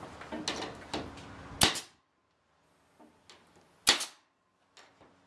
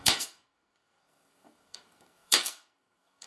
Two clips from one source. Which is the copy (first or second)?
second